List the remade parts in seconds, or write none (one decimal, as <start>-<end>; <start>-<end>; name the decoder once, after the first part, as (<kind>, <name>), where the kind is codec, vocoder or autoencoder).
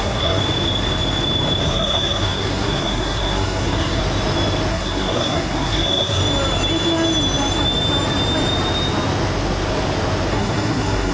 0.0-0.4 (codec, SNAC); 1.6-4.0; 4.7-6.2; 10.3-11.1